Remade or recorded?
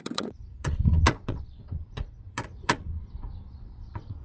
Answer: remade